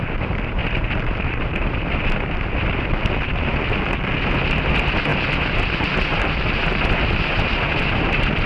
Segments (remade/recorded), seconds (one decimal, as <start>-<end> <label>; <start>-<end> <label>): 0.0-0.6 recorded; 0.6-2.9 remade; 2.9-8.5 recorded